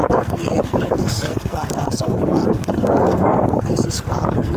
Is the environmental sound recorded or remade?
remade